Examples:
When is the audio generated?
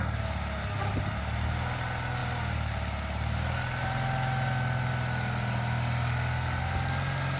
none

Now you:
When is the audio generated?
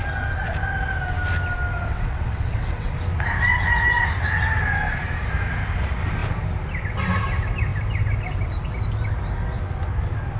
1.9-2.9